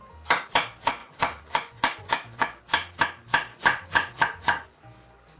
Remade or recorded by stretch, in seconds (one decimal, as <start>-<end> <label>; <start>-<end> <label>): 0.0-1.0 recorded; 1.0-2.7 remade; 2.7-3.5 recorded; 3.5-4.8 remade; 4.8-5.4 recorded